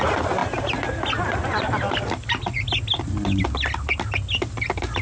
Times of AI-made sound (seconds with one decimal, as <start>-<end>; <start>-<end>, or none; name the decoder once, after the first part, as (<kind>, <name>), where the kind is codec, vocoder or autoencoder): none